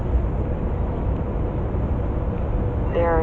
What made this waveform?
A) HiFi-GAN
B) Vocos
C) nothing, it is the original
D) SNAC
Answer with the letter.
C